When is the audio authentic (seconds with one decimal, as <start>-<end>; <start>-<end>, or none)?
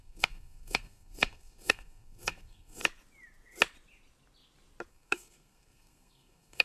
2.8-4.9